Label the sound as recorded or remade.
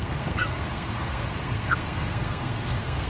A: remade